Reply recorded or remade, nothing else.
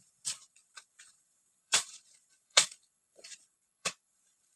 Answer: remade